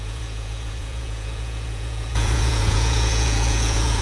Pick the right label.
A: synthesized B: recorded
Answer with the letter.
A